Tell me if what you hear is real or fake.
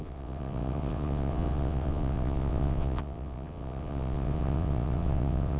fake